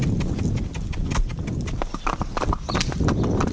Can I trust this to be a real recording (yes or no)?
yes